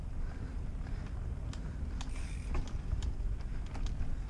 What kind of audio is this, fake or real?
real